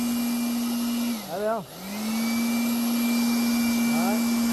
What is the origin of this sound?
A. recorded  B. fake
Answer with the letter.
A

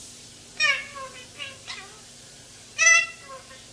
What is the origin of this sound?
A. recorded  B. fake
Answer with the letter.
A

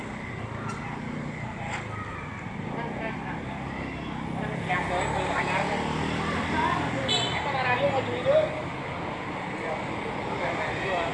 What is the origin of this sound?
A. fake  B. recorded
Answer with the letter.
B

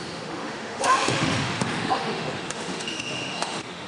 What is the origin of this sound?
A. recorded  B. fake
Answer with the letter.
B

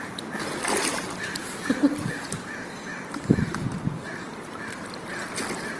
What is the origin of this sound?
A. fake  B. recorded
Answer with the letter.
B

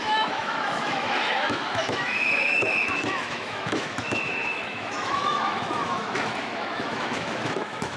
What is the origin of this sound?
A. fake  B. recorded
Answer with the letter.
A